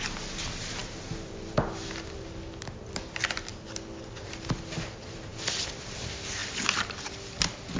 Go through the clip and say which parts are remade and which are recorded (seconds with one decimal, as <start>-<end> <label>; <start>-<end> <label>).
0.0-7.8 recorded